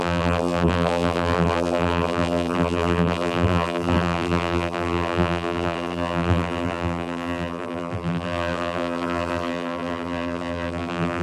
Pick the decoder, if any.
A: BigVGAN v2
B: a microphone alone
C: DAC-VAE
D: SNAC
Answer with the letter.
A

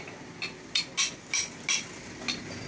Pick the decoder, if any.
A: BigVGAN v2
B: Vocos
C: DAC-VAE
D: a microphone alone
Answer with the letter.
D